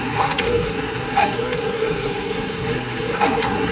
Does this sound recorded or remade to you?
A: remade